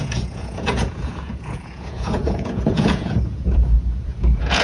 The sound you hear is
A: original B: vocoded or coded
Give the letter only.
B